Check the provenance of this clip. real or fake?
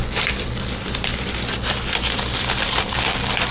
fake